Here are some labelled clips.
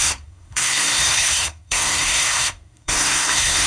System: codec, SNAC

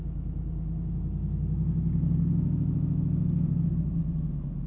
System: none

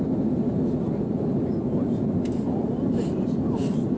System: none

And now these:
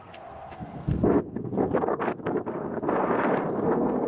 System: codec, SNAC